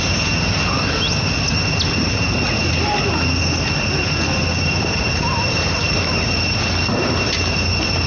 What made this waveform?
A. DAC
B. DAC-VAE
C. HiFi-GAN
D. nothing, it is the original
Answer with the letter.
D